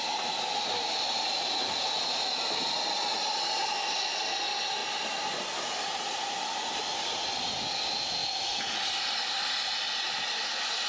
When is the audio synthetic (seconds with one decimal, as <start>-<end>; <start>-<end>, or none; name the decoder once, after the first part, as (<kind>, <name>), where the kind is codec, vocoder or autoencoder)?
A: none